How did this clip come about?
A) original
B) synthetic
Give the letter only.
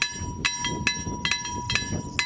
A